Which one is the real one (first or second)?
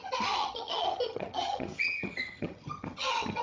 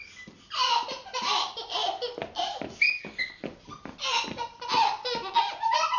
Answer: second